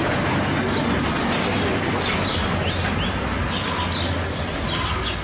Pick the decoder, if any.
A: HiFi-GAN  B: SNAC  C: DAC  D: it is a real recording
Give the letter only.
D